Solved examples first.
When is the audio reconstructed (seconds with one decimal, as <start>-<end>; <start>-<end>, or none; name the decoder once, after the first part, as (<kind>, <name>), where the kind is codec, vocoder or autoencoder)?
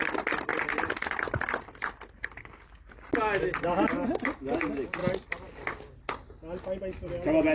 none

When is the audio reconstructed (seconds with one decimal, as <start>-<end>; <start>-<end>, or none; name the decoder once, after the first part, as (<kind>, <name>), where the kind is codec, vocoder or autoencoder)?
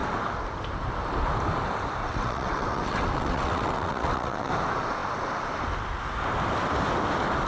2.0-4.5 (vocoder, WaveNeXt)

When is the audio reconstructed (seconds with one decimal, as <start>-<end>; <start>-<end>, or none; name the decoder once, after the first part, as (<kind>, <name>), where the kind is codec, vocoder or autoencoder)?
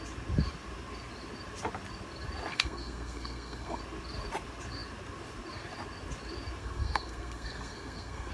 2.5-3.8 (codec, SNAC); 6.6-8.3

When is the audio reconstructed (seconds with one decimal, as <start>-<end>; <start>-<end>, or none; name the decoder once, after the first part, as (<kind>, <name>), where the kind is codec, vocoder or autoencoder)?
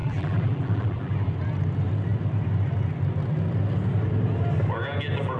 0.0-1.3 (vocoder, BigVGAN v2)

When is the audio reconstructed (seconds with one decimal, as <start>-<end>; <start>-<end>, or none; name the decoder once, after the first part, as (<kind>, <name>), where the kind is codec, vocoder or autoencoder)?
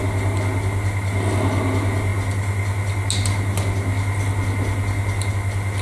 none